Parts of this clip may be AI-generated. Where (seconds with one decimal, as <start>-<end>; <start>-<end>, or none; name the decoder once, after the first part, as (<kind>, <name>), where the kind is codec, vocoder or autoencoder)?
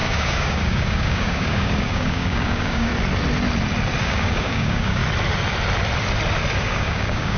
0.0-2.9 (codec, DAC); 4.0-5.0; 6.6-7.4